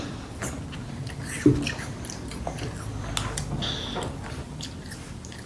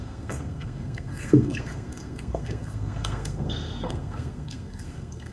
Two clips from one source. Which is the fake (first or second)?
second